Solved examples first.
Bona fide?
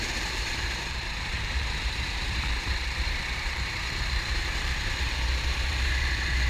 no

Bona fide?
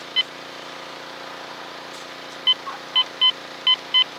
yes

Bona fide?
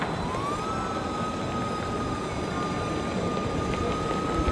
yes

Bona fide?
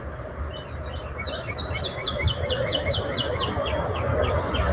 yes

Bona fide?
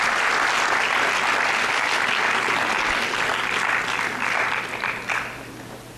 yes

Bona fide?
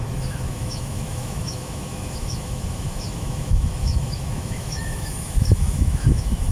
no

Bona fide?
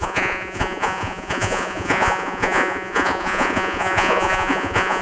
no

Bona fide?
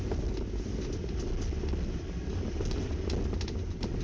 yes